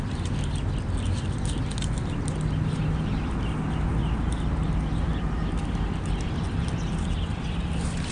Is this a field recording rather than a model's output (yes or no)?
yes